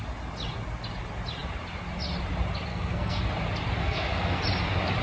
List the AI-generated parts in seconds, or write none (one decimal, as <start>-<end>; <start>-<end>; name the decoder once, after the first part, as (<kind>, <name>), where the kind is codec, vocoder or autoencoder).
2.7-3.2 (codec, SNAC); 3.8-4.4